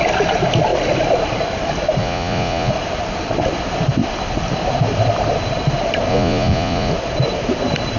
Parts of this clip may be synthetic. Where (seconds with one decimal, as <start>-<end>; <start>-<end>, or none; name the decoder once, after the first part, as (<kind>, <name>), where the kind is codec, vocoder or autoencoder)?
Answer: 2.0-2.7 (vocoder, Vocos); 6.1-6.9